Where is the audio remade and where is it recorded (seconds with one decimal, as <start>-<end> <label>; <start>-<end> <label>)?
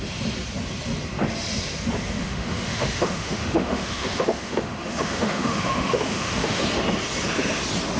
0.0-2.2 recorded; 2.2-6.6 remade; 6.6-8.0 recorded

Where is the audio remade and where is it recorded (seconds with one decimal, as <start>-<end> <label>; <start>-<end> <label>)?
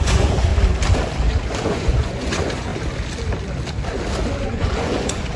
0.0-0.5 remade; 0.5-1.6 recorded; 1.6-2.7 remade; 2.7-4.4 recorded; 4.4-5.4 remade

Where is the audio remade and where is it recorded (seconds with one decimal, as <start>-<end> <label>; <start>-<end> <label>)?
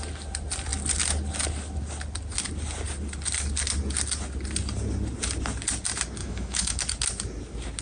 0.0-6.2 recorded; 6.2-6.8 remade; 6.8-7.8 recorded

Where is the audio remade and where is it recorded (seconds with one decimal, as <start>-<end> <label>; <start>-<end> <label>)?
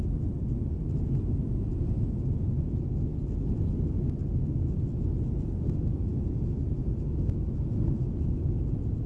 0.0-1.4 recorded; 1.4-2.7 remade; 2.7-6.1 recorded; 6.1-7.0 remade; 7.0-9.1 recorded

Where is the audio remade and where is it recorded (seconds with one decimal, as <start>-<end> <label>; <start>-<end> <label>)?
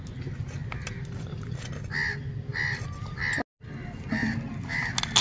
0.0-5.2 recorded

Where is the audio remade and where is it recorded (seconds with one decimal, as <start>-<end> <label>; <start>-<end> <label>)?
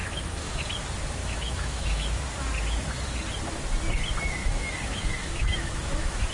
0.0-0.6 remade; 0.6-1.2 recorded; 1.2-2.2 remade; 2.2-4.4 recorded; 4.4-6.3 remade